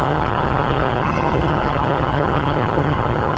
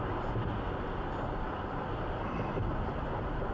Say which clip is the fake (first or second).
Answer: first